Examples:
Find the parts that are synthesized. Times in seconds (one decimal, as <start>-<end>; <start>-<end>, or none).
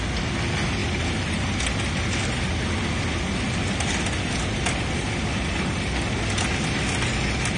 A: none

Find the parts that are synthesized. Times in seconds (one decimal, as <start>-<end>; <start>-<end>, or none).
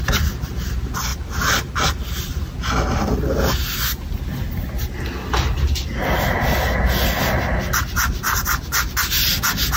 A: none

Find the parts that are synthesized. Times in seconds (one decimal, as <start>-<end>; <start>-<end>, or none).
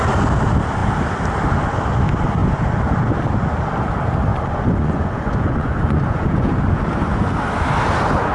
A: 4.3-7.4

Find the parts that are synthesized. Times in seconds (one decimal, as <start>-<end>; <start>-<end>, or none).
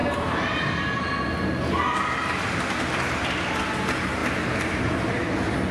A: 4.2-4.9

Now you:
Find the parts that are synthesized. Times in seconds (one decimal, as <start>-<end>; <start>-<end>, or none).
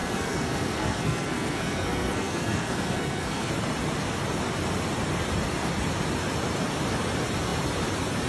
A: 0.0-3.5